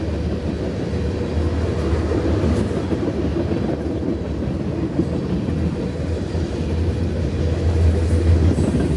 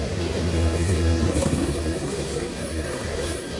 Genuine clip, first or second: first